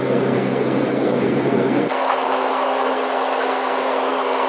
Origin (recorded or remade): remade